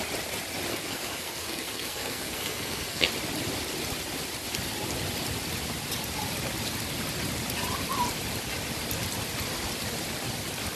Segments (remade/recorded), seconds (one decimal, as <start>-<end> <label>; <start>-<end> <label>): 0.0-0.7 recorded; 0.7-3.1 remade; 3.1-10.8 recorded